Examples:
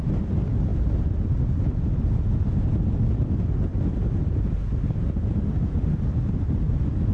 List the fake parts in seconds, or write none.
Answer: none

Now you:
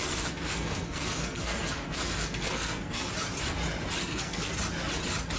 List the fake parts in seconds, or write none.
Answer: 0.0-3.1 (codec, SNAC); 4.0-4.5

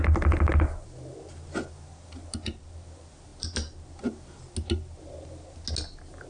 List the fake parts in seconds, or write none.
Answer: none

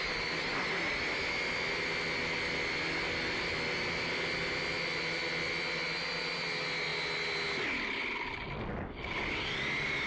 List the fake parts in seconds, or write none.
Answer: none

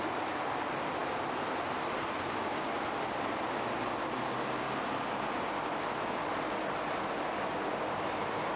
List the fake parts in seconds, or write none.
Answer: none

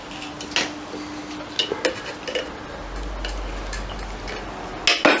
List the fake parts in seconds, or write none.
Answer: none

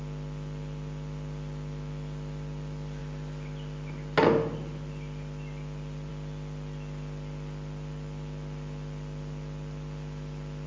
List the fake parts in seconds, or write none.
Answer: none

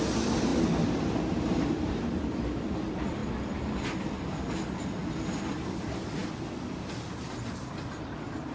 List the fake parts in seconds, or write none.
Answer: none